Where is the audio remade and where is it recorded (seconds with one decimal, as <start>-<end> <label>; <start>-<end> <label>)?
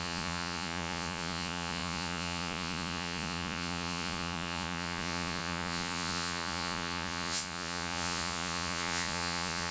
0.0-9.7 remade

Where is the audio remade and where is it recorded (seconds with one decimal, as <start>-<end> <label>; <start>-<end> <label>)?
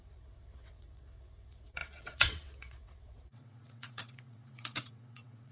0.0-5.5 remade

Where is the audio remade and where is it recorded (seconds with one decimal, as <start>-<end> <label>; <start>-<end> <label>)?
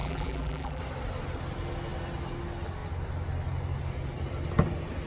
0.0-0.8 remade; 0.8-5.1 recorded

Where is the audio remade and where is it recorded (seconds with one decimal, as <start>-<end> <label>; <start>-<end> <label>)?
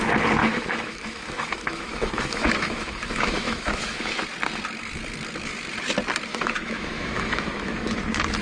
0.0-0.4 recorded; 0.4-4.1 remade; 4.1-6.3 recorded; 6.3-8.0 remade; 8.0-8.4 recorded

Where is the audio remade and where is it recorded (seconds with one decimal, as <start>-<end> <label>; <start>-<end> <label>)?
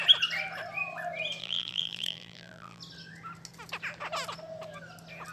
0.0-1.4 recorded; 1.4-2.8 remade; 2.8-5.3 recorded